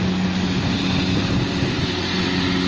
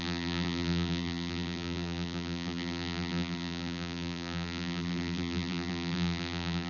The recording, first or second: first